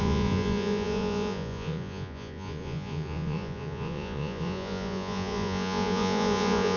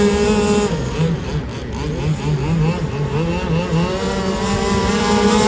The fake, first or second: first